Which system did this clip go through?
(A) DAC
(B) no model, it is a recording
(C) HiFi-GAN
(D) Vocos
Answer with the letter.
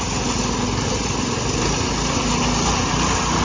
B